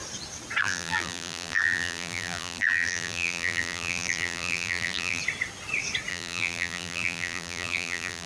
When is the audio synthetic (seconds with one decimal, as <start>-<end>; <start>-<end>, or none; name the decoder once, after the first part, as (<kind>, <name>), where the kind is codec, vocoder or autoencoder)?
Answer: 0.6-5.2 (vocoder, BigVGAN v2); 6.1-8.3